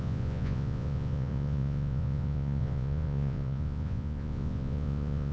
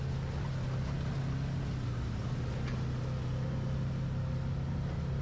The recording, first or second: second